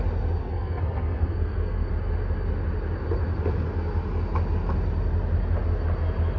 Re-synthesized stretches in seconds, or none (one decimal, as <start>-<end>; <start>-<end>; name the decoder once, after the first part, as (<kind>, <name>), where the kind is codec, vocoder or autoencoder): 0.4-1.9 (codec, SNAC)